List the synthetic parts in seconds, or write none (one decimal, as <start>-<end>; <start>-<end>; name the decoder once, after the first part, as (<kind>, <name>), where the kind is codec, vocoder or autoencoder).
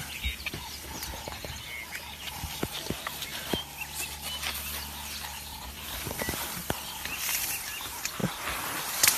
8.2-9.2 (vocoder, BigVGAN v2)